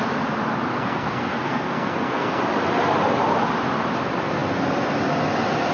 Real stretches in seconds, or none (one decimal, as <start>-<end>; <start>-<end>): 0.0-0.7; 2.4-5.7